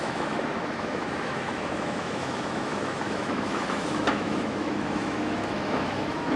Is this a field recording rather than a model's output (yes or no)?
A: no